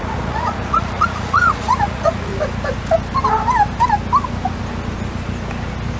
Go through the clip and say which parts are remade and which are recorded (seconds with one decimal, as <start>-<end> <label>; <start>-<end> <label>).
0.0-2.3 remade; 2.3-6.0 recorded